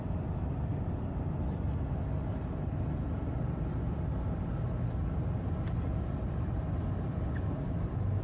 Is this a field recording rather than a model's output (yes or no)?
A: yes